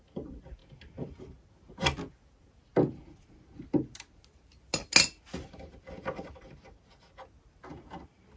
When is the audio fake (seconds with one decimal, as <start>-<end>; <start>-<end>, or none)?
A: none